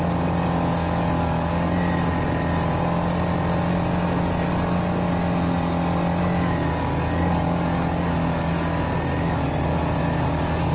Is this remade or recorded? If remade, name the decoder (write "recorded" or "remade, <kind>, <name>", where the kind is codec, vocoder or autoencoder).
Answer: recorded